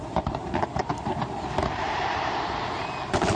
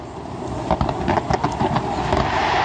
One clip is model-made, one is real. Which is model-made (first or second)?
first